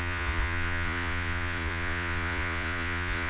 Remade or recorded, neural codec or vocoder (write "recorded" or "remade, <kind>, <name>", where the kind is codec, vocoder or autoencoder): remade, vocoder, Vocos